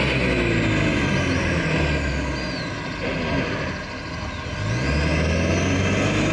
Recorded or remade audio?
recorded